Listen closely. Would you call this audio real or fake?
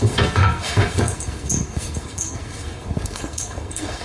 fake